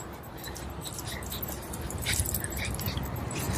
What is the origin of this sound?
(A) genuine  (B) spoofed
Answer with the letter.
B